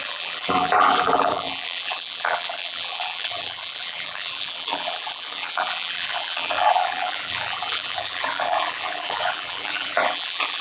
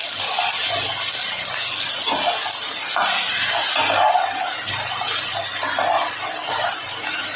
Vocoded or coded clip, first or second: first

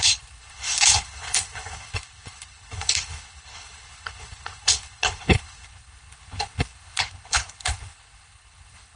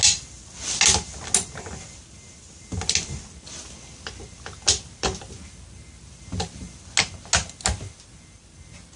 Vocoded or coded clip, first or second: first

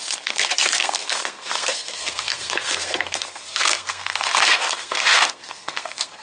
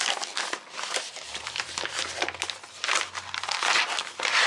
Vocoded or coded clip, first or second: first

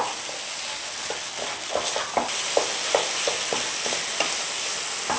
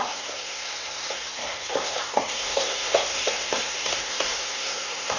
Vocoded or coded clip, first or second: second